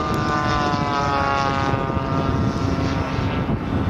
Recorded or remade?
recorded